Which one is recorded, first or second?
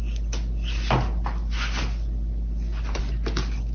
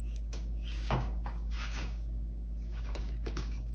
first